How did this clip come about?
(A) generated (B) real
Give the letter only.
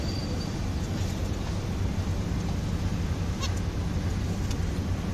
B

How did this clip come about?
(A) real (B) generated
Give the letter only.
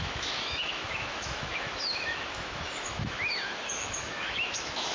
B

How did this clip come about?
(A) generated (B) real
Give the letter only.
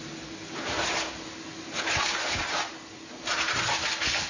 B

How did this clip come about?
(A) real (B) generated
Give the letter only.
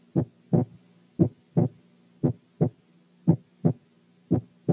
A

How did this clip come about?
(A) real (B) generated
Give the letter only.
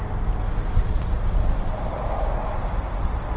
A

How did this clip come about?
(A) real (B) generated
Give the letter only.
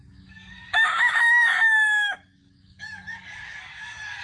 B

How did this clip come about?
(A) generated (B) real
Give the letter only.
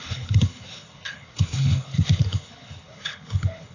A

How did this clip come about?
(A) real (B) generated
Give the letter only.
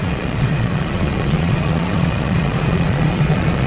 B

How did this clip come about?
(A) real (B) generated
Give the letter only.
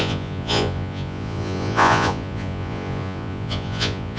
B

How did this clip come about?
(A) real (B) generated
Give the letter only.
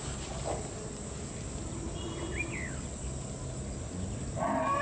A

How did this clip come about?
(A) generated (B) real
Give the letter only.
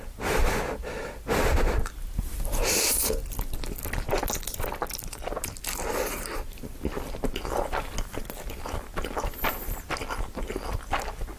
B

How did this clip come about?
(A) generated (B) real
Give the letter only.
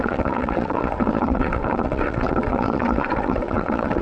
A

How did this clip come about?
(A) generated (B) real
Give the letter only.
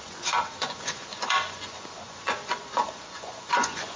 A